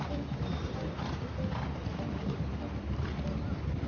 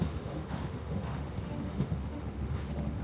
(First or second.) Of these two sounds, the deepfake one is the second